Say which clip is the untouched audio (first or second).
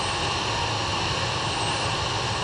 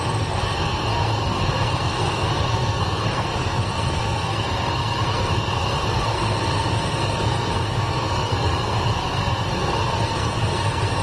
first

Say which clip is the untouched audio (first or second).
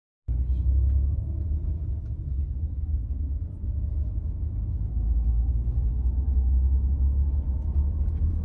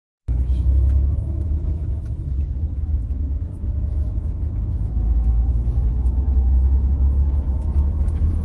first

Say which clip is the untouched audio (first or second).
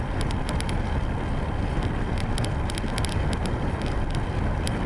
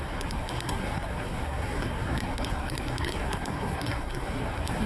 first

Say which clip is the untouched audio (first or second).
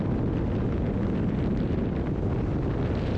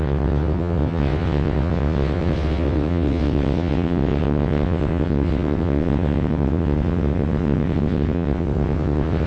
first